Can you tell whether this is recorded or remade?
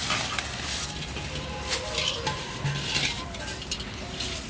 recorded